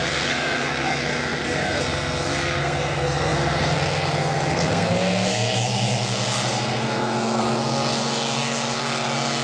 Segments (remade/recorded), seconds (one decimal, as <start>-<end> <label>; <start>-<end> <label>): 0.0-9.4 remade